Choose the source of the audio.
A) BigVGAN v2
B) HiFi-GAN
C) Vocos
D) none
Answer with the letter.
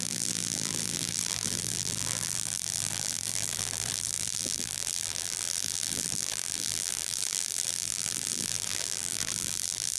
A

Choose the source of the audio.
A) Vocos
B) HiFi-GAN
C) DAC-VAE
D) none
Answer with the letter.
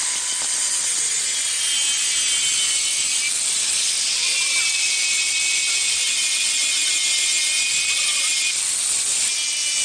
D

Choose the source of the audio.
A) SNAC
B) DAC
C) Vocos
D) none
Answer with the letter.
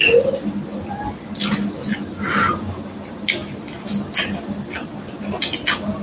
D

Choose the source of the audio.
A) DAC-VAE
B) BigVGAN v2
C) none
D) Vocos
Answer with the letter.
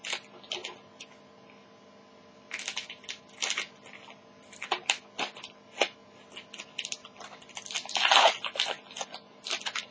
C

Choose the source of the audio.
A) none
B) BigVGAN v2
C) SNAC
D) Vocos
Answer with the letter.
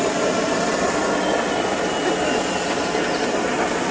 A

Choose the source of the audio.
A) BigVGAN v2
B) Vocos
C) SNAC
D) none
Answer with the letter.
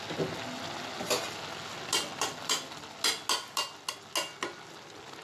D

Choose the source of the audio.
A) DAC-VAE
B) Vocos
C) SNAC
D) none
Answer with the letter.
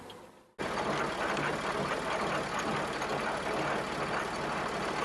D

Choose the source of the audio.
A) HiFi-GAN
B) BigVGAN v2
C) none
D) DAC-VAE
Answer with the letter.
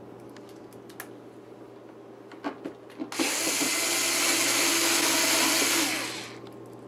C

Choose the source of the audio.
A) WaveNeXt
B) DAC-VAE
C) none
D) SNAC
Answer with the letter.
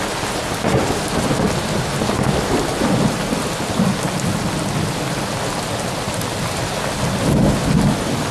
C